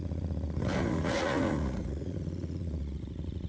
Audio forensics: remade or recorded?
remade